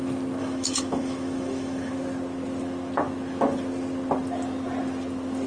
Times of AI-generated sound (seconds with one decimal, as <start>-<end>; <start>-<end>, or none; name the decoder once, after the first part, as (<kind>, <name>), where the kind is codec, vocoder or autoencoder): 0.4-1.9 (autoencoder, DAC-VAE)

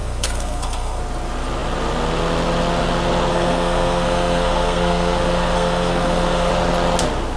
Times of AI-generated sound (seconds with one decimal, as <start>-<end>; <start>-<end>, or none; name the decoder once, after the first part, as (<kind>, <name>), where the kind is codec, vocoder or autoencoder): 0.0-1.0 (codec, SNAC); 3.3-6.5

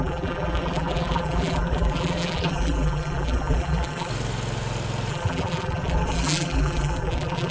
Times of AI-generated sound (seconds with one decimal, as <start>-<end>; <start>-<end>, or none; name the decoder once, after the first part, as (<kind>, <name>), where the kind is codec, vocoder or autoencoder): 0.0-4.1 (vocoder, BigVGAN v2); 5.1-7.5

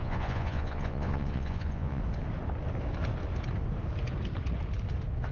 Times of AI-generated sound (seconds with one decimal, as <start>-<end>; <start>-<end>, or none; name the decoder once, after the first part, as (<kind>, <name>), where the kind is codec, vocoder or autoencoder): 0.0-2.0 (vocoder, Vocos)

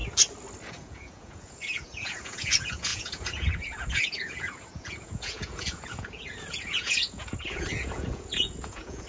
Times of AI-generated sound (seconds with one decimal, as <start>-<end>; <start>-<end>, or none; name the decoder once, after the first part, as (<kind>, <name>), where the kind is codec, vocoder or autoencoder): 0.7-9.1 (vocoder, Vocos)

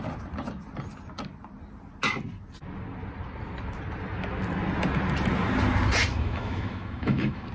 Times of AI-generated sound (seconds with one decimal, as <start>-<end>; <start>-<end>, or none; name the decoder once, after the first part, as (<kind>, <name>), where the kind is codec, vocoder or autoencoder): 6.1-7.5 (autoencoder, DAC-VAE)